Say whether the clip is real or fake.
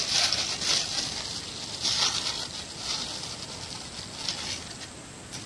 real